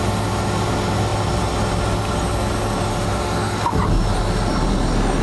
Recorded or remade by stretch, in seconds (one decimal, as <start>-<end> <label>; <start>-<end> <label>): 0.0-5.2 recorded

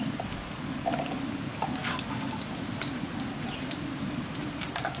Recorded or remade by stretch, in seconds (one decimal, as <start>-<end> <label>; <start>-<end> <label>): 0.0-5.0 recorded

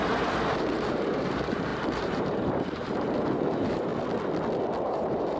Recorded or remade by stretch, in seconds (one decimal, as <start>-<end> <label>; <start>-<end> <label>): 0.0-3.9 remade; 3.9-4.8 recorded; 4.8-5.4 remade

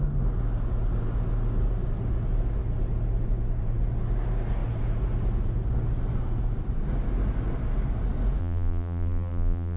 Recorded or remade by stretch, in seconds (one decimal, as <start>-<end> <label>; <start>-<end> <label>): 0.0-8.4 recorded; 8.4-9.8 remade

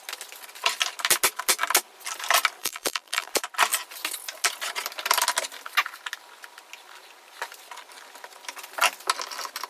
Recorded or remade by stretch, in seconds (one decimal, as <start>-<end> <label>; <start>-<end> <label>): 0.0-2.6 recorded; 2.6-3.3 remade; 3.3-9.7 recorded

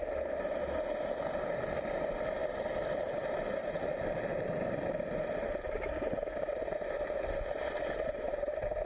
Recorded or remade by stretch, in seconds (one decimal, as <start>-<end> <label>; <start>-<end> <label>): 0.0-3.6 recorded; 3.6-8.9 remade

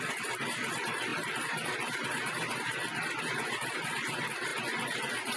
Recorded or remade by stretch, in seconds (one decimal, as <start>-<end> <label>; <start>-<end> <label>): 0.0-5.4 recorded

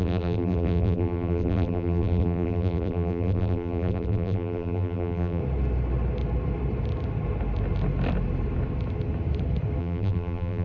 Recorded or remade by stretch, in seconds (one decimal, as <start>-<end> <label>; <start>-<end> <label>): 0.0-5.4 remade; 5.4-9.8 recorded; 9.8-10.6 remade